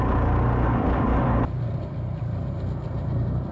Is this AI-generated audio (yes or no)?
no